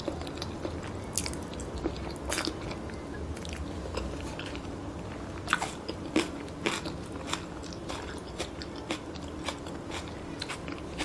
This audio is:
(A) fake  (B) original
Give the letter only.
B